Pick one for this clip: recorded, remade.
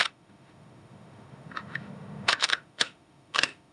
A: remade